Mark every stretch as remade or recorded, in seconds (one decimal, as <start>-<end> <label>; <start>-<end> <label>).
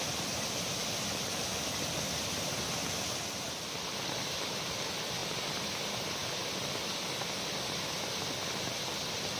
0.0-9.4 recorded